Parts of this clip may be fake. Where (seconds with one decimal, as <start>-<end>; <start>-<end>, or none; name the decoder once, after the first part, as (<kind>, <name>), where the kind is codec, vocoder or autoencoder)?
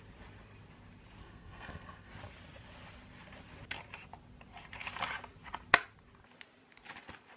1.2-2.1 (codec, SNAC)